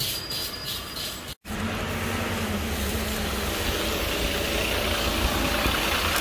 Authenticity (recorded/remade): recorded